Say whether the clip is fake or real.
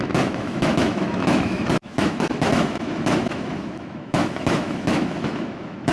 fake